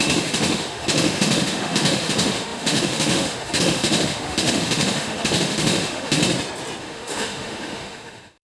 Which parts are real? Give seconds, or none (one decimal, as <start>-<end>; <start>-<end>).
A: 6.2-6.8